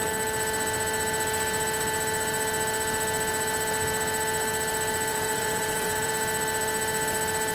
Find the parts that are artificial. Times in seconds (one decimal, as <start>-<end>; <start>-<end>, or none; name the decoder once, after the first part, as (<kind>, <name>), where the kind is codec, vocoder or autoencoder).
5.1-6.1 (vocoder, Vocos)

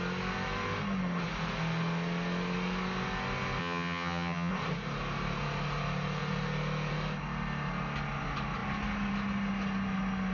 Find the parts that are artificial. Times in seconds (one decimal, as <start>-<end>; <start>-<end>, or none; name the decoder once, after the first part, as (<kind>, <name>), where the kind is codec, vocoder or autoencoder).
3.6-4.5 (vocoder, HiFi-GAN)

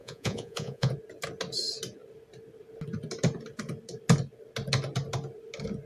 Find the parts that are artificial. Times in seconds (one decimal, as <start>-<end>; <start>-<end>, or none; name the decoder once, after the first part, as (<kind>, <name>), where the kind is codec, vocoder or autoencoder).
0.0-0.9 (vocoder, Vocos)

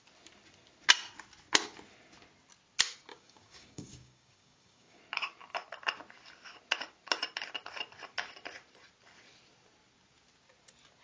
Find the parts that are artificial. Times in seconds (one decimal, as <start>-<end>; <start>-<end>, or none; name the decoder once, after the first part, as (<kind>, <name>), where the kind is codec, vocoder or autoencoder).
3.1-5.0 (codec, DAC)

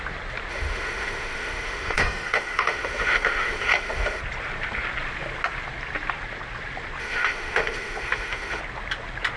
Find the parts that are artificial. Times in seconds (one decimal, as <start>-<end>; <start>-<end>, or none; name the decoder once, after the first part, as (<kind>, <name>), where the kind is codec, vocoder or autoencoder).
0.5-4.2 (autoencoder, DAC-VAE); 7.0-8.6

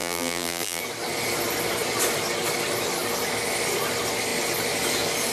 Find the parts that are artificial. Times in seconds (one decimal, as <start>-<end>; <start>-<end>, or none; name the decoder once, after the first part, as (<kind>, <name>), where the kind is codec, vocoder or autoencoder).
0.0-0.8 (vocoder, BigVGAN v2)

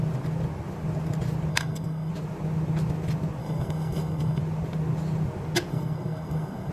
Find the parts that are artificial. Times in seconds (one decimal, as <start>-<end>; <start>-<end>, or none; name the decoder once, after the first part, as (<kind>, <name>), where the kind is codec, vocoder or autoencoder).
1.5-2.1 (codec, SNAC); 3.4-4.4; 5.7-6.7

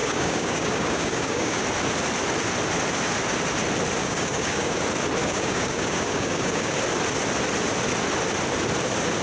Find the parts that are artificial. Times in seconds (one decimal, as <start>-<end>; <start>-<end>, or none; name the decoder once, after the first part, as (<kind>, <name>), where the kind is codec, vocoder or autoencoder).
0.0-1.6 (codec, DAC); 4.0-4.8; 5.2-6.7